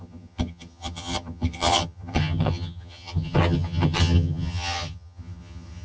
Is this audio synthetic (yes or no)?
yes